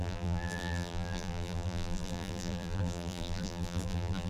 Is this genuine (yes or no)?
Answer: no